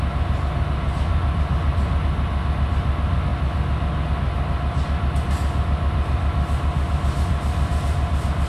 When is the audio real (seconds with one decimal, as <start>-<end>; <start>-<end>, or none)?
0.0-8.5